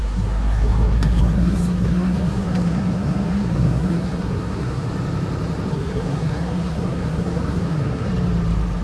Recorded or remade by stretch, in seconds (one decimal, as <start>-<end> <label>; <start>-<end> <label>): 0.0-4.9 remade; 4.9-5.7 recorded; 5.7-8.1 remade; 8.1-8.8 recorded